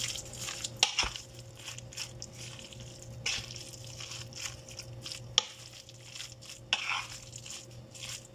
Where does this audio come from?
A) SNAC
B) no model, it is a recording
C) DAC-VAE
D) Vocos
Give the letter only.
B